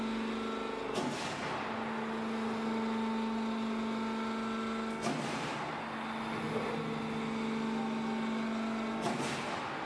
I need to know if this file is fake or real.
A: real